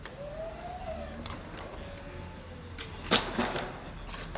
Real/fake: real